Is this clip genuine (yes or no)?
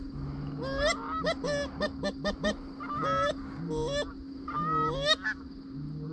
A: yes